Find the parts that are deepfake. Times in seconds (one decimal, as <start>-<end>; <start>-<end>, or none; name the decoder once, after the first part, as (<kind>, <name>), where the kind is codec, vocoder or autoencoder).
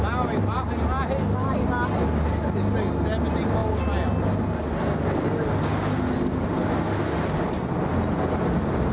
none